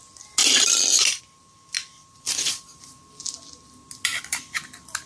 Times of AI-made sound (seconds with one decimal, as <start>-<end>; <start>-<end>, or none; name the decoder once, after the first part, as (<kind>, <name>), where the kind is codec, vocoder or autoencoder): 0.4-1.2 (vocoder, BigVGAN v2); 2.0-2.8